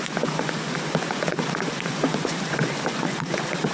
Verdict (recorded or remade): remade